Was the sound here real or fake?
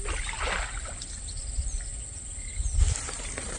real